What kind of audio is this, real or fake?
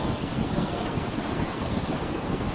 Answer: fake